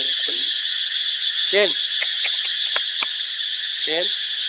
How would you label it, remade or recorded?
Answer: remade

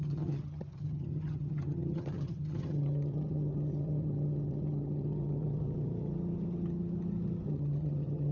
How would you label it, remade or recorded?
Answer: remade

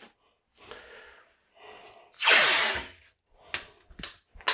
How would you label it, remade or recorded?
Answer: recorded